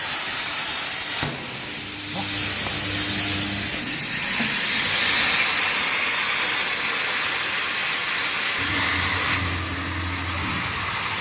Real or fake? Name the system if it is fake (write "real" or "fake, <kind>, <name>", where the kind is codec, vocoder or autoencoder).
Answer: real